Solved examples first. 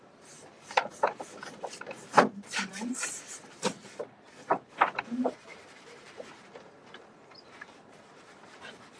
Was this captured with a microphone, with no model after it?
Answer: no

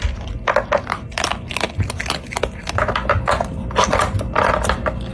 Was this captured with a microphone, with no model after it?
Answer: yes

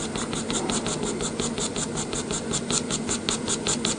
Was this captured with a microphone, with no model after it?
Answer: yes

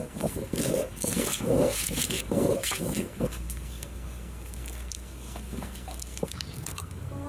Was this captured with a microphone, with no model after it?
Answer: no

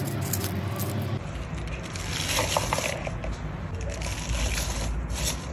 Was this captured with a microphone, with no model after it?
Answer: yes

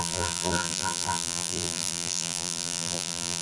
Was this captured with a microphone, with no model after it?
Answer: no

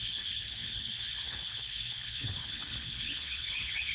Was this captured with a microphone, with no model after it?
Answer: no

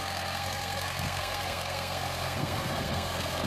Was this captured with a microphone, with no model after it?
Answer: no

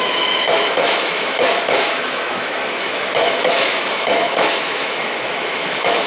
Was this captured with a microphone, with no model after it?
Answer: no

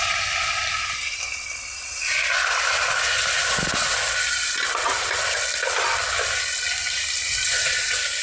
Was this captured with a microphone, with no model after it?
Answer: yes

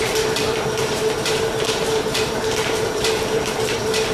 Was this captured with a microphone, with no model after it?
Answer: no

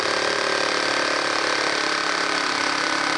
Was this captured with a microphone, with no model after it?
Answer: no